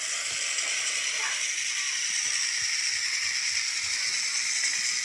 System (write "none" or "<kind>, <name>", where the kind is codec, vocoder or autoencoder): none